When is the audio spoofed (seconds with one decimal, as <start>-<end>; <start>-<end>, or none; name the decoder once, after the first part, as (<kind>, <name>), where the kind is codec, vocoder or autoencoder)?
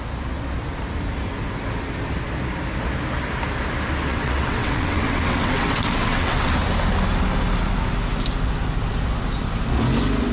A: 4.1-6.5 (vocoder, WaveNeXt)